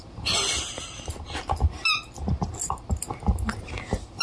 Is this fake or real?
real